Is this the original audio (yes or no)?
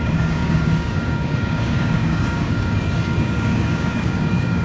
no